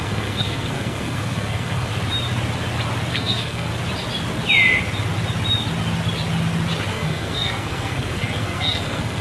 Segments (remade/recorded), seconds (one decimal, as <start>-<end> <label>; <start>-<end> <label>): 0.0-1.9 remade; 1.9-3.1 recorded; 3.1-3.7 remade; 3.7-6.9 recorded; 6.9-9.2 remade